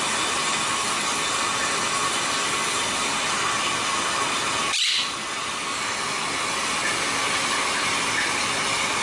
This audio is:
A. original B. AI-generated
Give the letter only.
B